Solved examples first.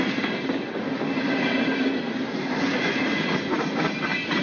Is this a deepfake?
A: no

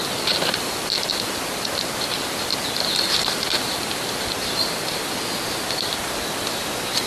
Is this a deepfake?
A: no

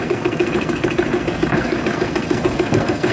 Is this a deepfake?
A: yes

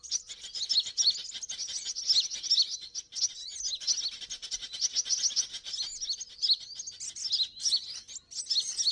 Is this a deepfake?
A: no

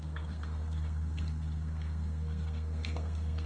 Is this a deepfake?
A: yes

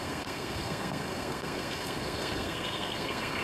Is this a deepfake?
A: yes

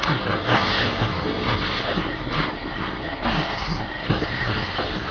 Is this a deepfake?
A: yes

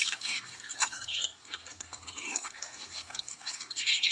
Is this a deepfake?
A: yes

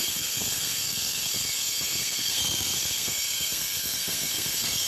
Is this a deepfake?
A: yes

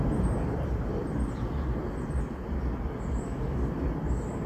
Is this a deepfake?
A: no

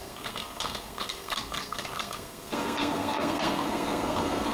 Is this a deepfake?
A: yes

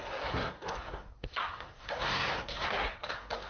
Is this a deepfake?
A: yes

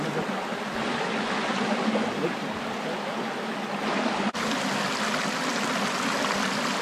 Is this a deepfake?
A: no